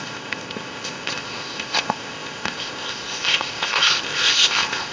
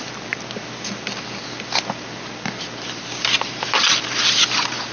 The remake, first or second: first